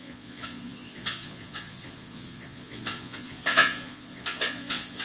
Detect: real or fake fake